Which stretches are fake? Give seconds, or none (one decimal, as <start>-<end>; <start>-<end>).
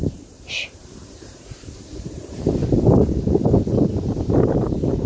0.0-2.6; 3.6-5.1